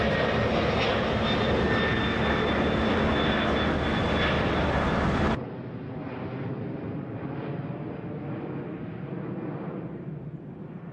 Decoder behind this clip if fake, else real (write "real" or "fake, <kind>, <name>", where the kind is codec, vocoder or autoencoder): real